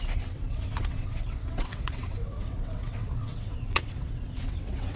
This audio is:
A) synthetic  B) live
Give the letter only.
A